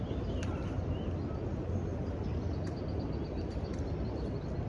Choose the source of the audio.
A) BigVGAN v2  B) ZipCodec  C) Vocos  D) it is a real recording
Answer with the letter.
D